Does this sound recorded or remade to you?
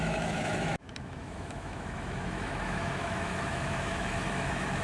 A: remade